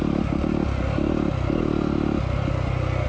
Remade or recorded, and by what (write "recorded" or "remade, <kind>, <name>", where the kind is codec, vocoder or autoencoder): recorded